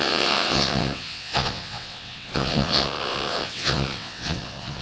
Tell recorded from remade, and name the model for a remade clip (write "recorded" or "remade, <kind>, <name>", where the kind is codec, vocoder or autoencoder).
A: remade, vocoder, WaveNeXt